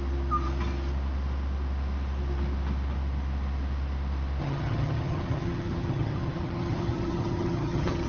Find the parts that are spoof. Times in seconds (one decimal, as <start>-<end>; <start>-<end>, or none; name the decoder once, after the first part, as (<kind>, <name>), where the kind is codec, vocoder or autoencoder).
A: 4.4-8.1 (vocoder, HiFi-GAN)